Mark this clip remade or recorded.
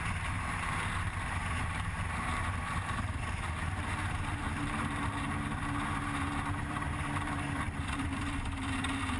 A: remade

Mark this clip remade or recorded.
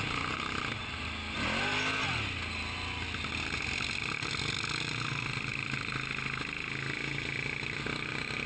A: recorded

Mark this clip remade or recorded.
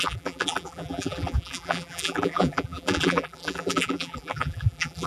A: remade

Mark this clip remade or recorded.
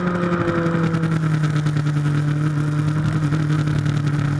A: recorded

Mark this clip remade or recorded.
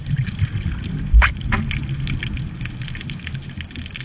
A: recorded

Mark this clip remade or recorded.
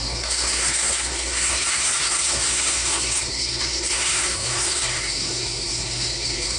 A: remade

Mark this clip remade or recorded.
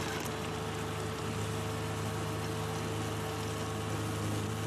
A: recorded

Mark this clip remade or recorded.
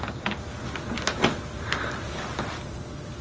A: recorded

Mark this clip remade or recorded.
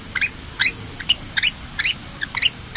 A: recorded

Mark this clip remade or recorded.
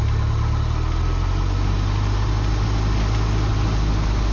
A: recorded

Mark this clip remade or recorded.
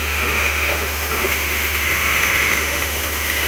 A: remade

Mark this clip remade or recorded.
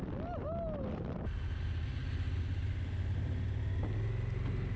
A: recorded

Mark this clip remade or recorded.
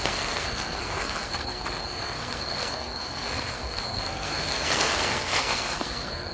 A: remade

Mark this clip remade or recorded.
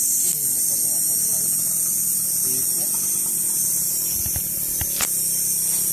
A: recorded